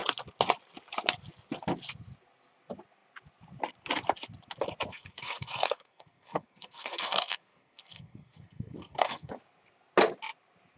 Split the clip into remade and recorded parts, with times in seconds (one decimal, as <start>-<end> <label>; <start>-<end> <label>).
0.0-4.9 recorded; 4.9-9.3 remade; 9.3-10.8 recorded